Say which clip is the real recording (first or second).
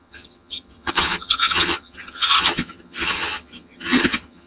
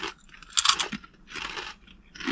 second